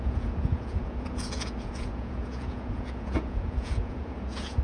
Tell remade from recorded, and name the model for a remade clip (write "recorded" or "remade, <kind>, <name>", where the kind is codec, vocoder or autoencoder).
remade, vocoder, Vocos